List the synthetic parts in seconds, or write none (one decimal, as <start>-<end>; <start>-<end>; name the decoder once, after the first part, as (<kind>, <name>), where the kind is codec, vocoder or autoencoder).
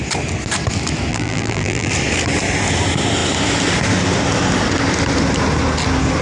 1.1-1.9 (vocoder, BigVGAN v2)